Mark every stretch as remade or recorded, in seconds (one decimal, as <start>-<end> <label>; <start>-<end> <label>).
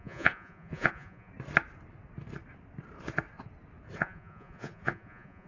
0.0-1.3 remade; 1.3-4.0 recorded; 4.0-5.5 remade